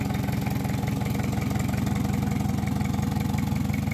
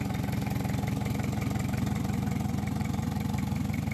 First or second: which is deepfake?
second